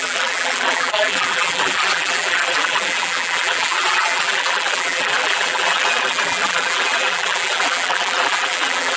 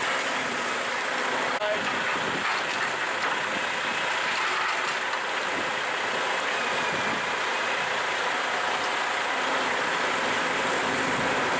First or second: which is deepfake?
first